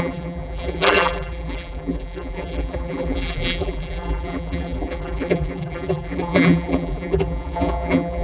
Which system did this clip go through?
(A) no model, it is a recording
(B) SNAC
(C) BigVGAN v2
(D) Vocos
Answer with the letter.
C